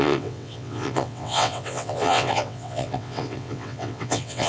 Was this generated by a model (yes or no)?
yes